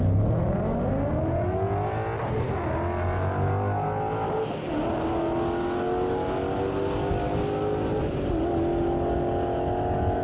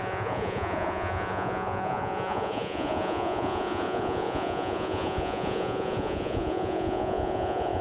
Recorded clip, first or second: first